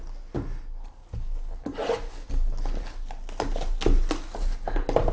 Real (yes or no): yes